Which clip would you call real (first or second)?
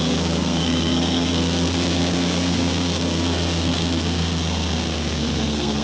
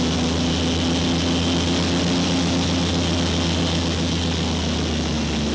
second